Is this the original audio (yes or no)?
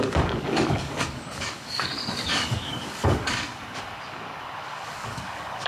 no